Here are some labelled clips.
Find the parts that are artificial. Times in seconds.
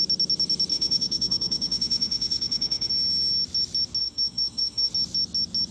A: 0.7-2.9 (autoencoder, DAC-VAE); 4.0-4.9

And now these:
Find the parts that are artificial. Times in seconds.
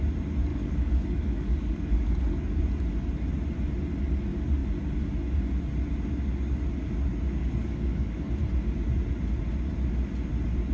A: 0.5-2.6 (codec, DAC); 7.4-8.3